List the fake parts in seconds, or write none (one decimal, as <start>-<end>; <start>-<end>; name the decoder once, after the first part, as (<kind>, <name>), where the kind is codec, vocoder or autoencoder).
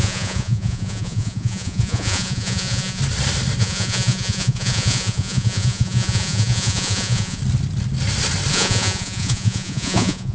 0.0-3.0 (vocoder, Vocos); 3.6-7.4; 8.5-10.3